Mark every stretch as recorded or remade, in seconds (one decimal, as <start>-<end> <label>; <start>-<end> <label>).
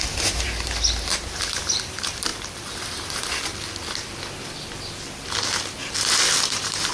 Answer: 0.0-2.3 remade; 2.3-2.8 recorded; 2.8-3.5 remade; 3.5-6.4 recorded; 6.4-6.9 remade